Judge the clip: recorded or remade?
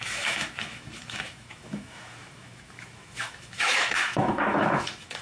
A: remade